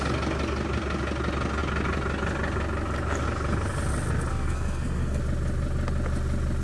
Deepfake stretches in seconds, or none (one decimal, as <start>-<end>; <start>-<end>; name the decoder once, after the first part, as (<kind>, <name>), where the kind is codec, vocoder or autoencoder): 4.3-5.2 (codec, SNAC)